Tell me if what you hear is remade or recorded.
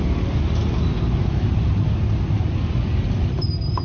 recorded